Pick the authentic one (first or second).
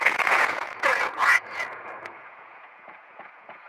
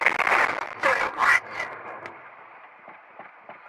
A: second